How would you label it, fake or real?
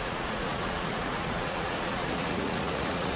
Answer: fake